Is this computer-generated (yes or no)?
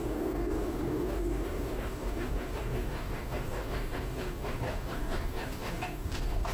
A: yes